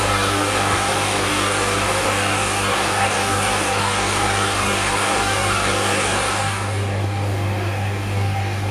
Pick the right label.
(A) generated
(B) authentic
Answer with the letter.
A